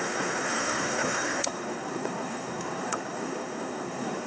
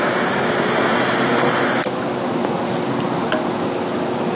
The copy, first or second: first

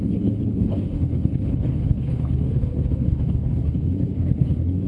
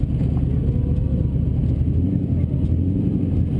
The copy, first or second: first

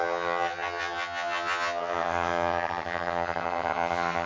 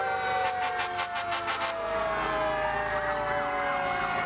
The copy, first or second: first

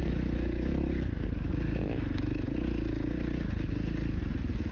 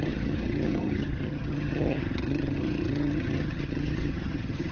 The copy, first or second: second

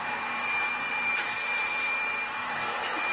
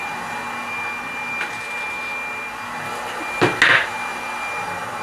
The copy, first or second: first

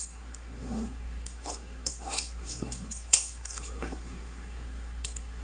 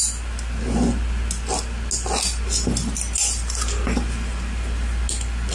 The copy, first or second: first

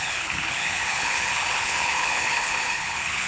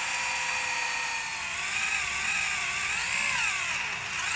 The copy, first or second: first